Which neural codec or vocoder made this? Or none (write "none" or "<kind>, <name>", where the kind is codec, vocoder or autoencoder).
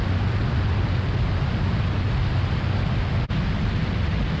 none